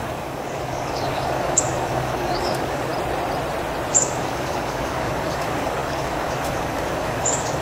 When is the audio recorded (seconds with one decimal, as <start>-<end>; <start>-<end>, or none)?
2.9-3.9